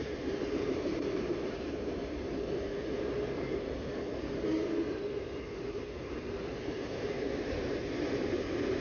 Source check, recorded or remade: remade